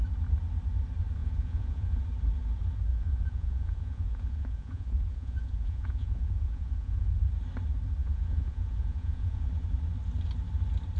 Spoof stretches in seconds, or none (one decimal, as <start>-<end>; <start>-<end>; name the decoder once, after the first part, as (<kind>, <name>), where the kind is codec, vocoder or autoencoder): 1.2-2.0 (vocoder, Vocos); 2.9-7.2; 8.0-9.5